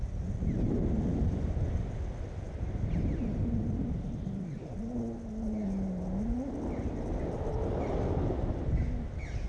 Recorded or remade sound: recorded